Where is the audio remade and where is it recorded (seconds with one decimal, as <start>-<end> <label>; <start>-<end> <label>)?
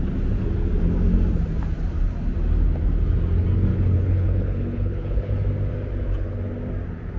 0.0-3.7 recorded; 3.7-5.3 remade; 5.3-7.2 recorded